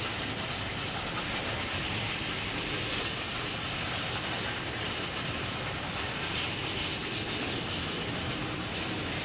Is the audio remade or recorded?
recorded